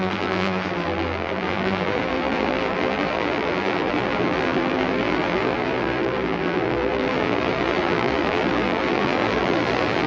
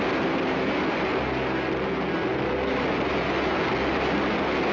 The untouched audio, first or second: second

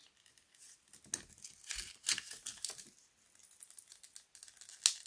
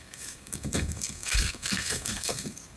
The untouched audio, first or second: first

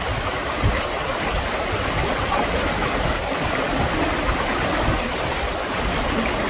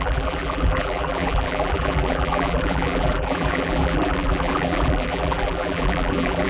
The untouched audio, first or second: first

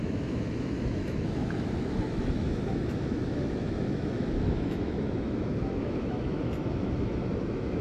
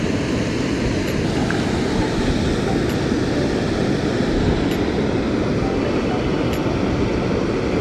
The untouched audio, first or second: second